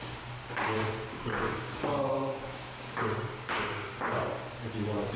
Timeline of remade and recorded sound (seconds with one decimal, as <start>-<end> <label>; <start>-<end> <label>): 0.0-1.3 recorded; 1.3-4.2 remade; 4.2-5.2 recorded